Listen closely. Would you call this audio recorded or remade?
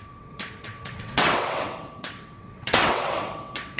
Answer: remade